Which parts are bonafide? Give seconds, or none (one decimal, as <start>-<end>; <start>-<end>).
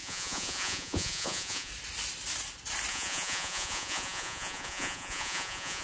1.7-2.9